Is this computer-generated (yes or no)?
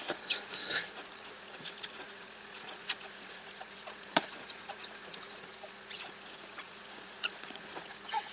yes